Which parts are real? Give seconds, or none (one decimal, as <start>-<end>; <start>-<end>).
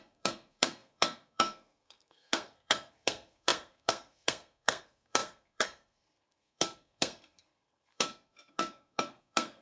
none